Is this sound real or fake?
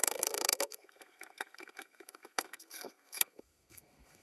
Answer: fake